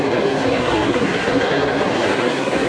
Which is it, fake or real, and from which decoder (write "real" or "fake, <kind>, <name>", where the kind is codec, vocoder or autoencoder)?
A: fake, codec, SNAC